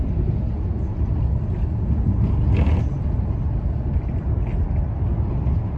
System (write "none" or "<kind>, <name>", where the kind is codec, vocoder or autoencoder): none